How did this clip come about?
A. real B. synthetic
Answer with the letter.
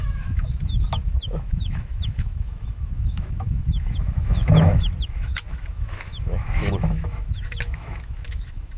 B